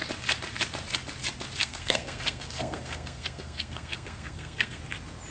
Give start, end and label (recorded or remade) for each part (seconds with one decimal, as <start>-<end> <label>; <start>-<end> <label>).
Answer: 0.0-1.6 recorded; 1.6-4.8 remade; 4.8-5.3 recorded